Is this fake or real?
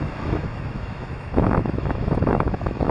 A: fake